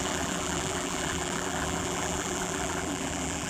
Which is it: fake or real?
fake